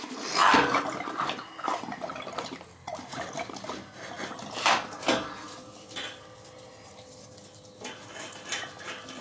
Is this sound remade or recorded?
recorded